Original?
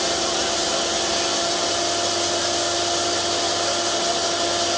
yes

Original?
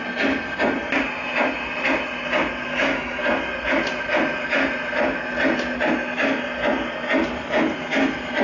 yes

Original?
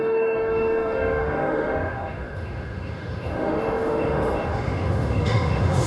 no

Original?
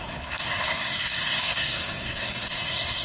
no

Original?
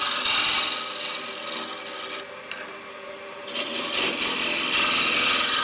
yes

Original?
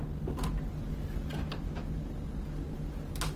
yes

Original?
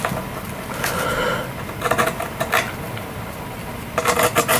yes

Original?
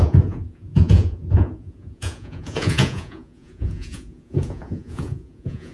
no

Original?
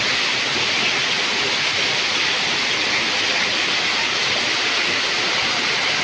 yes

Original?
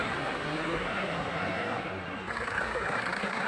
no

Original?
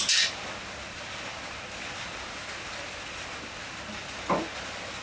yes